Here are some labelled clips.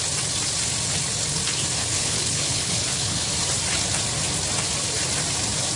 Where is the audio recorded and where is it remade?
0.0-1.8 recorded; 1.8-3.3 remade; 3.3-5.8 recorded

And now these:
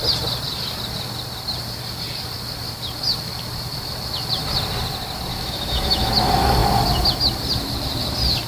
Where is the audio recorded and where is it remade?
0.0-5.3 recorded; 5.3-6.1 remade; 6.1-8.5 recorded

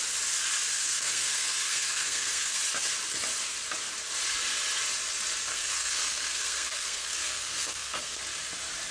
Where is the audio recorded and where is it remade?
0.0-0.7 recorded; 0.7-2.6 remade; 2.6-5.5 recorded; 5.5-8.2 remade; 8.2-8.9 recorded